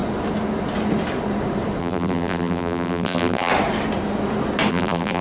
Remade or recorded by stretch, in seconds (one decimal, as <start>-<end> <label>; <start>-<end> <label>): 0.0-1.8 recorded; 1.8-3.5 remade; 3.5-4.7 recorded; 4.7-5.2 remade